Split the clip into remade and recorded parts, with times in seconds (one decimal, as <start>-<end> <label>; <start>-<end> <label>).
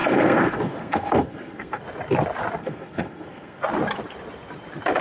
0.0-1.8 remade; 1.8-2.6 recorded; 2.6-3.6 remade; 3.6-5.0 recorded